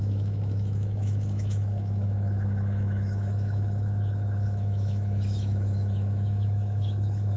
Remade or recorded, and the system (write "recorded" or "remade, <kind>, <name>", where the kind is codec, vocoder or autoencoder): remade, autoencoder, DAC-VAE